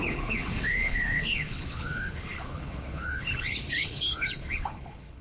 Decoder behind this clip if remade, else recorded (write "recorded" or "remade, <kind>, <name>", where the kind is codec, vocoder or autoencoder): remade, codec, HILCodec